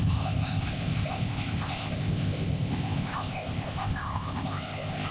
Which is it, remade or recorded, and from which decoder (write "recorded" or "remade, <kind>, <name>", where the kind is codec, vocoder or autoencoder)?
remade, codec, ZipCodec